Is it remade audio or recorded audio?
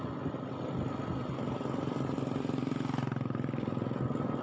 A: recorded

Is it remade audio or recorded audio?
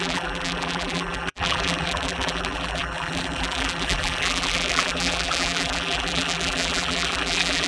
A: remade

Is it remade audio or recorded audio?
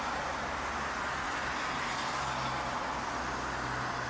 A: recorded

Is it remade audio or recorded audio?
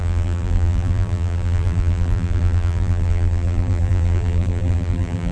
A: remade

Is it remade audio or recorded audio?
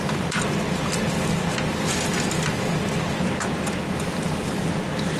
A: recorded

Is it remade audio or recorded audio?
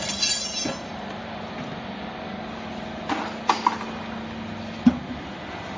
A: recorded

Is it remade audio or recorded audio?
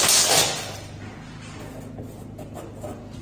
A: recorded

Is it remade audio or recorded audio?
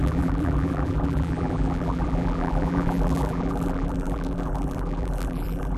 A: remade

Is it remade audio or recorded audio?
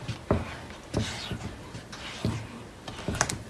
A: recorded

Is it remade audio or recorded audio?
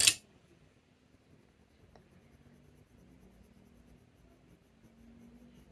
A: recorded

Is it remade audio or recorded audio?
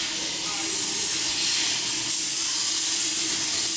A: recorded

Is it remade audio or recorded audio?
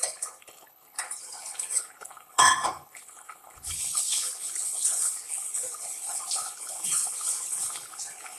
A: remade